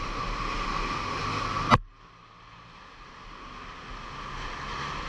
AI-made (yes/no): no